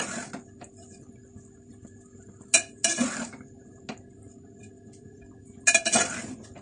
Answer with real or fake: real